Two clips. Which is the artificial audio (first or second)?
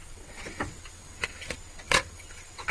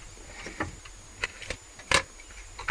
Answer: first